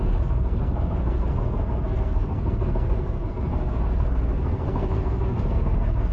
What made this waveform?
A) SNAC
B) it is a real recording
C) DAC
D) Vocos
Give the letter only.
A